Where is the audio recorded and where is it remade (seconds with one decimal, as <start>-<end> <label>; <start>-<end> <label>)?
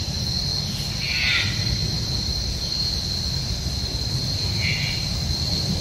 0.0-1.8 recorded; 1.8-2.8 remade; 2.8-4.2 recorded; 4.2-5.8 remade